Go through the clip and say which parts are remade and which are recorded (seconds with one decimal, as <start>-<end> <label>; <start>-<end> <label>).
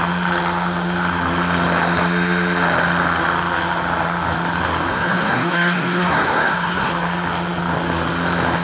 0.0-4.9 recorded; 4.9-6.9 remade; 6.9-8.6 recorded